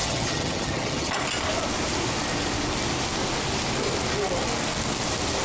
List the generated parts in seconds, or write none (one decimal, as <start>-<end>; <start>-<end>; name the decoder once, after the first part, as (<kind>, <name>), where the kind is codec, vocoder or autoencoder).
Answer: 0.0-1.1 (vocoder, HiFi-GAN)